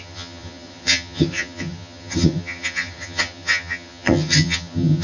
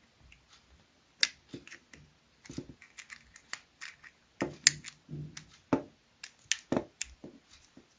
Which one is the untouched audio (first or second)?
second